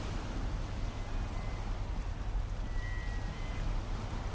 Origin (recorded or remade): recorded